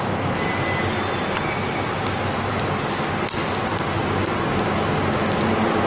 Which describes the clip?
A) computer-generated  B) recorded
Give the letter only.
B